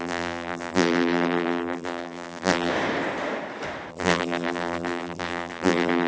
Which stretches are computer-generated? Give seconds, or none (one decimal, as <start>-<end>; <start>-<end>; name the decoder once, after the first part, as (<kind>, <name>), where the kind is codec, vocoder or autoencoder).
0.0-2.7 (vocoder, BigVGAN v2); 3.9-6.1